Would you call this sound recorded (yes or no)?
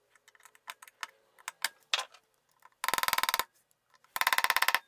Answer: yes